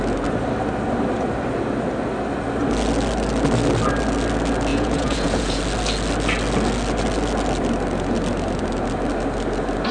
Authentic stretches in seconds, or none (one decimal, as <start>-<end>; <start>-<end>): 0.0-4.7; 5.6-9.9